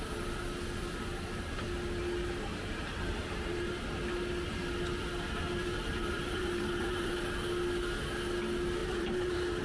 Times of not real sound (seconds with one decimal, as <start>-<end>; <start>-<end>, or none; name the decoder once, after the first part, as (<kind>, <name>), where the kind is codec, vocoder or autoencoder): 2.5-3.7 (vocoder, BigVGAN v2); 5.6-7.3; 8.8-9.6